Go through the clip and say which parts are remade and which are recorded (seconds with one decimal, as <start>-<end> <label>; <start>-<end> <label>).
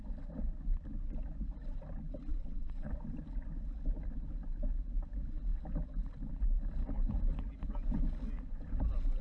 0.0-2.3 recorded; 2.3-2.9 remade; 2.9-9.2 recorded